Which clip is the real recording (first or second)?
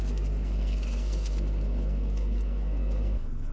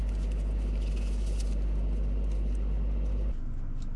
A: second